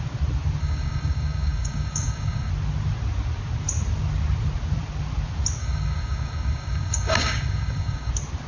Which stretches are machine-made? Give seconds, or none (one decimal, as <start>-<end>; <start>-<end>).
0.6-2.5; 5.6-8.1